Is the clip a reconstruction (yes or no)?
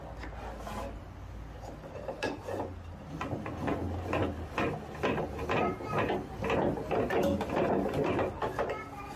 no